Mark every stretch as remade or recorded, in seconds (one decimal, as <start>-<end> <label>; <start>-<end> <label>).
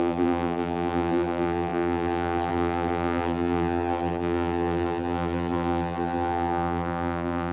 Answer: 0.0-7.5 remade